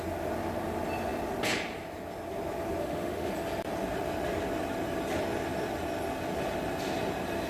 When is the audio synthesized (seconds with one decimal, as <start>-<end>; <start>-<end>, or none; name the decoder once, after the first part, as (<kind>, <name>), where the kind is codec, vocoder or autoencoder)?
2.8-3.3 (autoencoder, DAC-VAE)